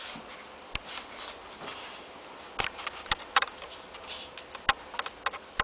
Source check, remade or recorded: recorded